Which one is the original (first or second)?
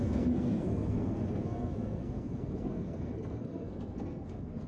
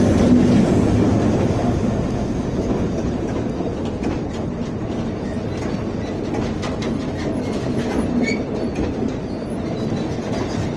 second